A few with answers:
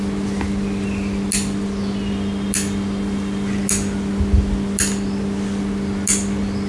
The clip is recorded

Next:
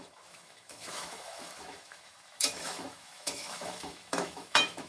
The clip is remade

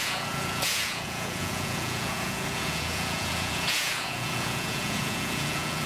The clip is remade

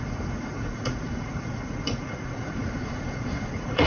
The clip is remade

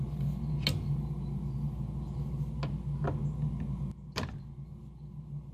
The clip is recorded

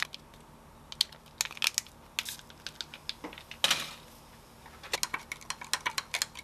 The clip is recorded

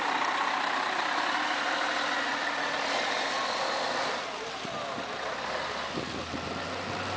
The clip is recorded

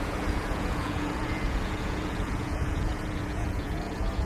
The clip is remade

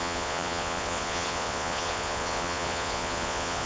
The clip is remade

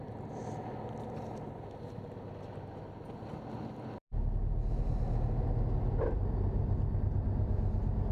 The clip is recorded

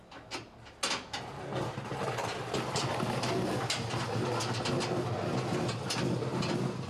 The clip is recorded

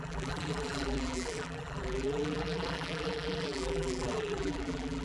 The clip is remade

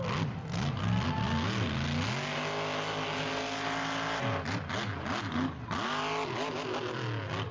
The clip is recorded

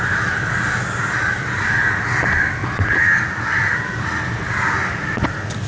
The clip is recorded